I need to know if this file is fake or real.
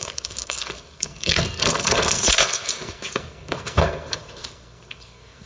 fake